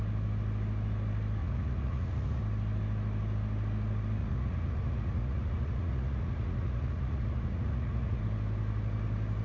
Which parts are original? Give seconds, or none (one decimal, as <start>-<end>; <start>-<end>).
0.0-1.4; 2.4-4.2; 8.2-9.4